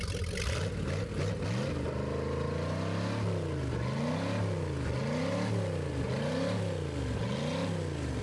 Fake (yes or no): no